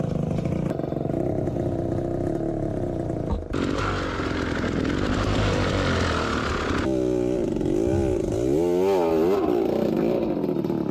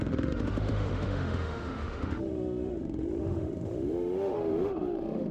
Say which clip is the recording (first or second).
first